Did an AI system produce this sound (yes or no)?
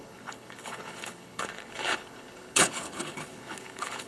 yes